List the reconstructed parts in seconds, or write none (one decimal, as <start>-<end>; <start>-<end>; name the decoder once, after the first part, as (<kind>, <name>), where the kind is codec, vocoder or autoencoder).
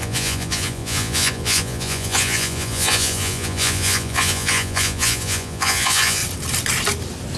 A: 0.0-6.2 (vocoder, Vocos)